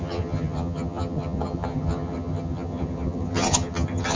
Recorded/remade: remade